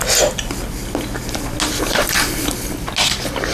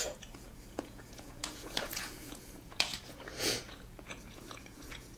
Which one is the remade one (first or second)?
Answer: second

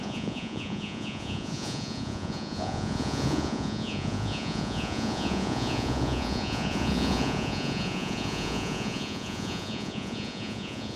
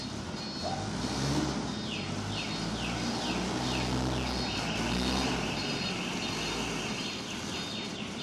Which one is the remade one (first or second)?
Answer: first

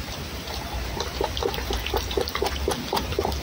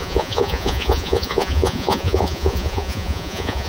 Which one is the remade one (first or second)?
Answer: second